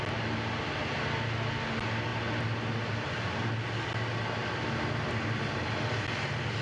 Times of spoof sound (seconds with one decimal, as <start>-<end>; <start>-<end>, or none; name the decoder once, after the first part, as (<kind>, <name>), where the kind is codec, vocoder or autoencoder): none